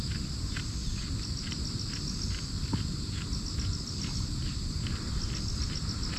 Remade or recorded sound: recorded